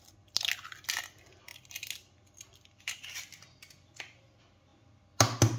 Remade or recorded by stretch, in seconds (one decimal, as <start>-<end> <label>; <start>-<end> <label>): 0.0-5.6 recorded